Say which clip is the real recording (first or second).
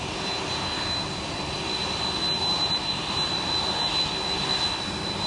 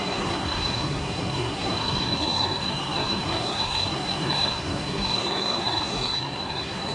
first